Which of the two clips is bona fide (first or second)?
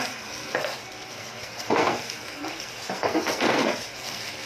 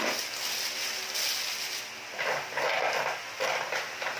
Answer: second